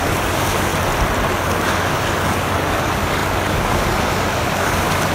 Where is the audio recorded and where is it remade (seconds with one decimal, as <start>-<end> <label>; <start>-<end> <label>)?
0.0-0.7 remade; 0.7-1.3 recorded; 1.3-5.1 remade